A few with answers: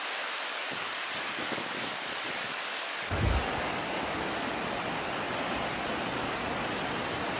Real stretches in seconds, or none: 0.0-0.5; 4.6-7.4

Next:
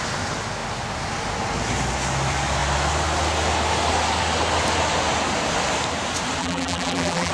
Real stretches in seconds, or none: 0.0-6.4